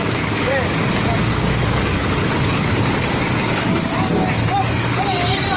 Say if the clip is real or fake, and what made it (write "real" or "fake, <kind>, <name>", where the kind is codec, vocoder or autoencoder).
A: fake, codec, DAC